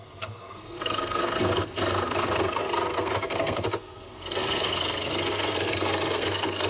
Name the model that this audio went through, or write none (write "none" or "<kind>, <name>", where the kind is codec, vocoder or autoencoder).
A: codec, SNAC